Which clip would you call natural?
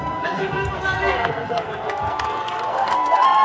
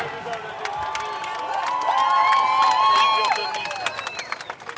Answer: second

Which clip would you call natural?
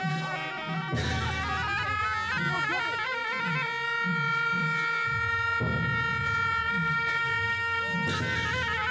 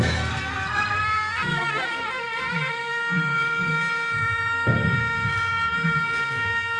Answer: first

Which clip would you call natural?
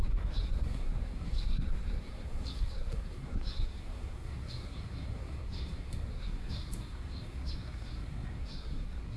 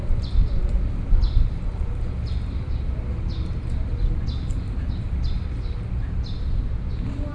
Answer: second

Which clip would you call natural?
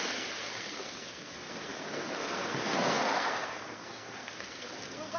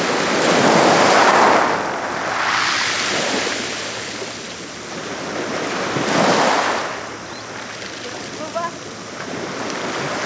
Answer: second